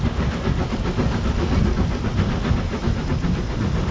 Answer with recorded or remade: recorded